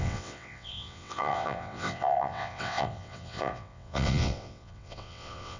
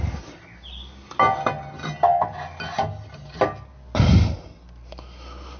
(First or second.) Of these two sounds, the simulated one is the first